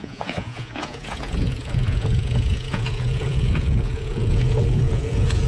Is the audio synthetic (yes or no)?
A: yes